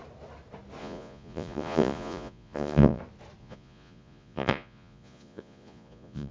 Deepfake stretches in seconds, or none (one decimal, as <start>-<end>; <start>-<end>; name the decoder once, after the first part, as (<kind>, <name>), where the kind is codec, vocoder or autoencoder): 0.8-3.0 (vocoder, Vocos); 3.4-6.3